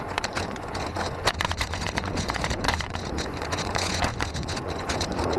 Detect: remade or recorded remade